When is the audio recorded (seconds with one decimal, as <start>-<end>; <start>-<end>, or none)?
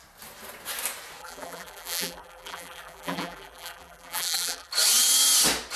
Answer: 0.0-1.2; 4.7-5.8